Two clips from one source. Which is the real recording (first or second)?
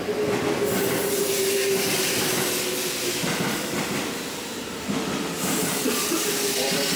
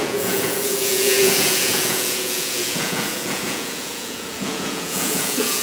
first